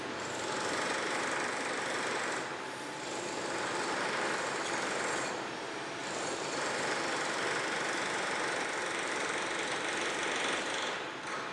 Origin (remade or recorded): remade